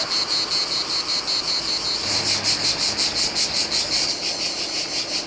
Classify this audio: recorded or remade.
recorded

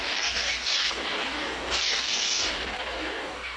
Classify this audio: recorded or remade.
remade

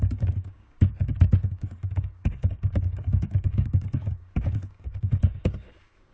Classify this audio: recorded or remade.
remade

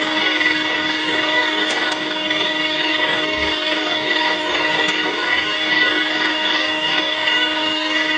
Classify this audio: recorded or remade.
remade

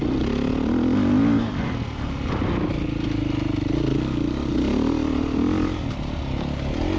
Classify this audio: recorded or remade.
recorded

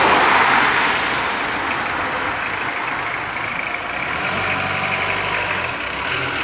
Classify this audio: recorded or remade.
recorded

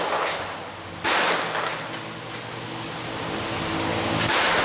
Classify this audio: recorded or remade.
recorded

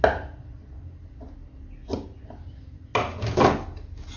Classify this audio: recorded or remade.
recorded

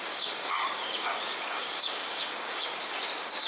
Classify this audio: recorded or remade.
remade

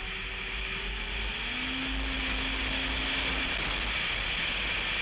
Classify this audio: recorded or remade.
recorded